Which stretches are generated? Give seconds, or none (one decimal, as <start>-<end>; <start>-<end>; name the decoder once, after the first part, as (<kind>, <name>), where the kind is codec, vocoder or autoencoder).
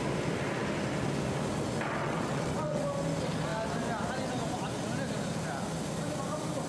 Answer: 2.0-2.8 (vocoder, WaveNeXt)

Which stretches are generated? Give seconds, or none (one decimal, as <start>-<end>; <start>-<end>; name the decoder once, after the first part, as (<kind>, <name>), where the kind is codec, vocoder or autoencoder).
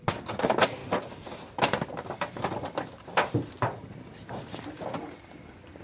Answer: none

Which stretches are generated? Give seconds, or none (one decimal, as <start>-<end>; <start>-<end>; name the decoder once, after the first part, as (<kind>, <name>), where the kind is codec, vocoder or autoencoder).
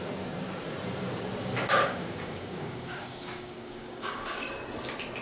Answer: 1.4-4.5 (codec, DAC)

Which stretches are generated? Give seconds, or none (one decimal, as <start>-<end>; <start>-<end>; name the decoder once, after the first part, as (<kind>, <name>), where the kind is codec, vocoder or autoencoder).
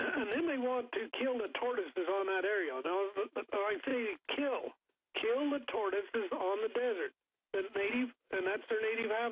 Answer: 2.2-3.4 (autoencoder, DAC-VAE)